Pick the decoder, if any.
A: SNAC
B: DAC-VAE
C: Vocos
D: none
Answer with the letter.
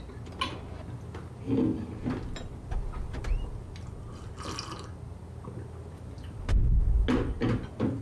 D